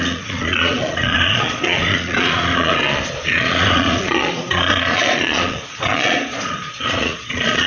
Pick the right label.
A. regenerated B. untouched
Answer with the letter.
A